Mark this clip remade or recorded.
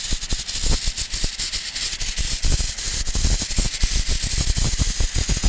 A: recorded